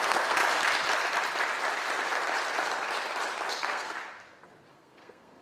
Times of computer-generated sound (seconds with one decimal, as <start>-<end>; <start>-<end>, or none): 0.0-0.4; 3.6-4.0; 4.7-5.4